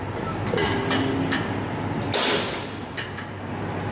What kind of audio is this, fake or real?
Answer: real